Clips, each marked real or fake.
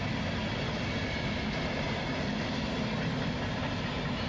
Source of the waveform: real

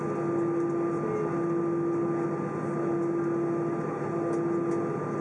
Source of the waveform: real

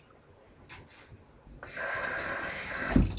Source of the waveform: real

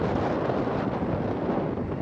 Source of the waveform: real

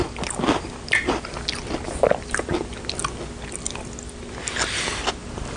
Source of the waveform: real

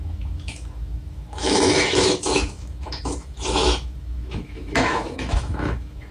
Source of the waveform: fake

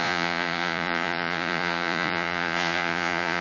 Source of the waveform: fake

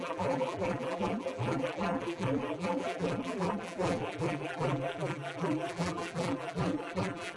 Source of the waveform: fake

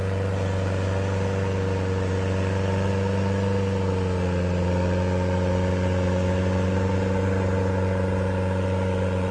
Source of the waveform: real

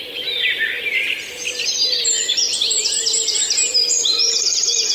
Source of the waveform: real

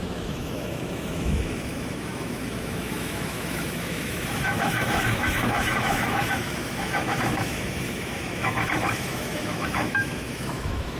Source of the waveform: fake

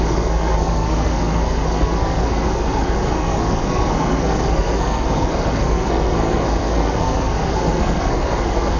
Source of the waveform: fake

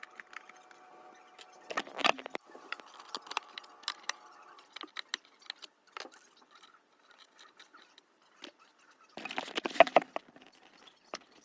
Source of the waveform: real